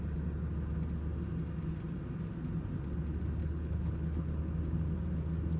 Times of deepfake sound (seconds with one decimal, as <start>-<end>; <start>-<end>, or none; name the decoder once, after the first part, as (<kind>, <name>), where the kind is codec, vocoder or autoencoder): 3.4-4.4 (codec, HILCodec)